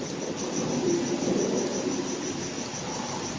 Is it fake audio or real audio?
real